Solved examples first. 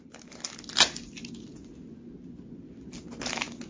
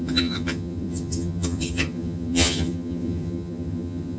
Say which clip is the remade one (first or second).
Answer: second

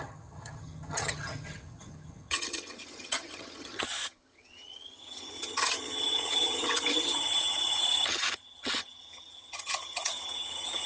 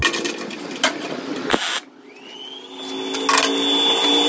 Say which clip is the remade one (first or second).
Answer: first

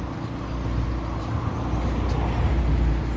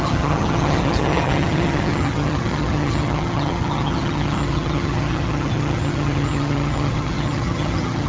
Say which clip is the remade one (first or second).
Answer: second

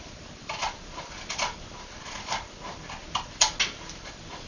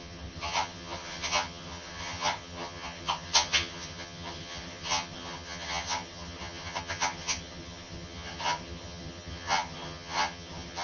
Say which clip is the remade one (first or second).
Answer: second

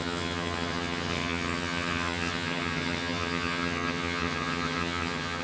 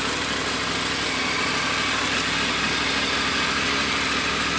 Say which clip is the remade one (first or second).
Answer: first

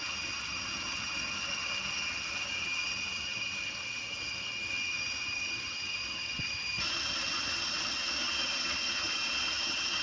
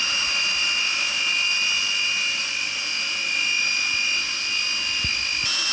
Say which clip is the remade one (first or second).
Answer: first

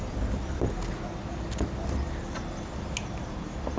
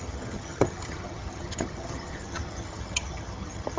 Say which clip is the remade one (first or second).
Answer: second